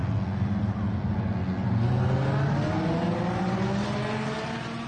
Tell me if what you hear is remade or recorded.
recorded